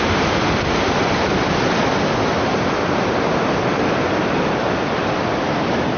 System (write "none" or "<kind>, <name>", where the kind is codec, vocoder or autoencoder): none